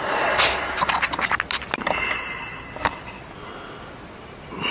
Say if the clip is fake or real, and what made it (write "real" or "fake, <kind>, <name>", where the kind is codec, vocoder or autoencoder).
real